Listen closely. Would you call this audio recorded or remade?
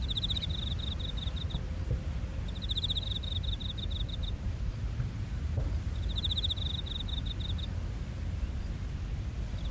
recorded